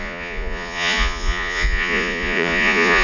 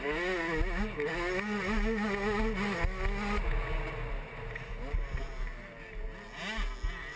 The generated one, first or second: first